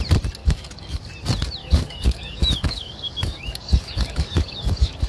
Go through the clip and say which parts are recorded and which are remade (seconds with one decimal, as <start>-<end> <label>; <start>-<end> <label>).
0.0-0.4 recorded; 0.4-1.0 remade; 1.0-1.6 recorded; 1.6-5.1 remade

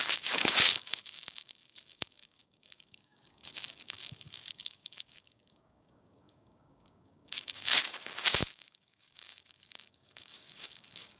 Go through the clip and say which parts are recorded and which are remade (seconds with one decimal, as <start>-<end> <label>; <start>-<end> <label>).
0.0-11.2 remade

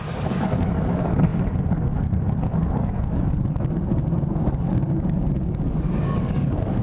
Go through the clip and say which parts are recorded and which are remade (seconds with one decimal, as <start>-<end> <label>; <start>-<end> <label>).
0.0-6.8 remade

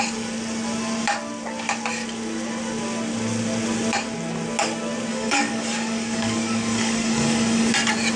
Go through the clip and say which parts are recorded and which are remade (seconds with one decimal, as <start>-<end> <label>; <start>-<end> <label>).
0.0-5.1 recorded; 5.1-7.7 remade; 7.7-8.2 recorded

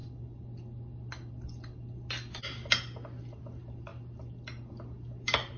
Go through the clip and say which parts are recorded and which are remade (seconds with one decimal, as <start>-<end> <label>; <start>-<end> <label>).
0.0-5.6 recorded

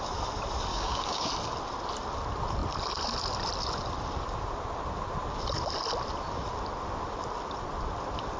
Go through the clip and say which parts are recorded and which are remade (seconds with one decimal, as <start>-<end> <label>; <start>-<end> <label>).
0.0-0.7 recorded; 0.7-1.3 remade; 1.3-8.4 recorded